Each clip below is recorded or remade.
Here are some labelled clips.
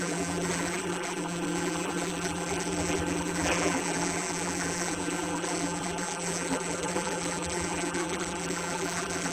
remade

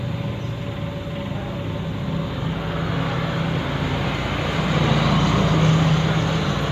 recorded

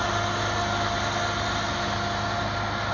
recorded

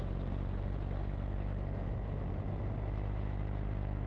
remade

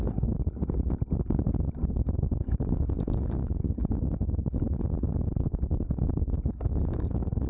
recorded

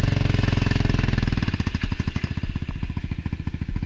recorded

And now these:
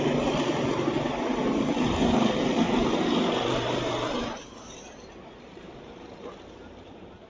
remade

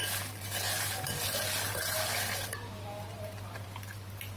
remade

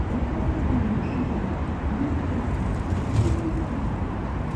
remade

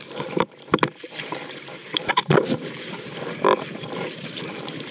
remade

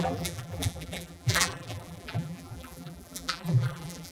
remade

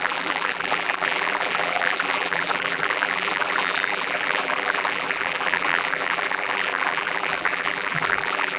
remade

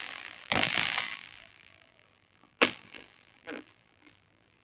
remade